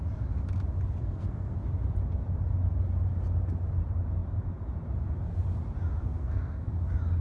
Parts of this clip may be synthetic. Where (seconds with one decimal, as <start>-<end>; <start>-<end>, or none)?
1.0-1.6; 6.0-6.7